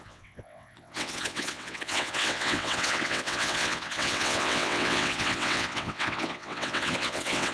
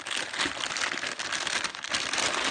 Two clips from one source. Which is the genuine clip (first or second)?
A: second